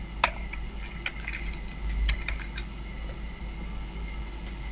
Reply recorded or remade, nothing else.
recorded